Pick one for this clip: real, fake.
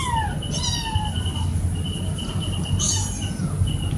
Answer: real